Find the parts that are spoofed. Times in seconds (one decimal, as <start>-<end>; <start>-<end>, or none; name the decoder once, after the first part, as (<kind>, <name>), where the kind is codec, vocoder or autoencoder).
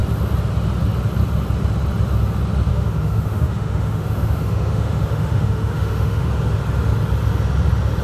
2.7-6.3 (autoencoder, DAC-VAE)